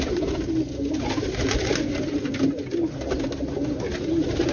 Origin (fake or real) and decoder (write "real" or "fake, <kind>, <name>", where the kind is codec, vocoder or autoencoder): real